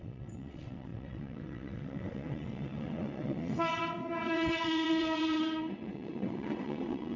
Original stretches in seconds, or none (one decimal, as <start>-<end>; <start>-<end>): none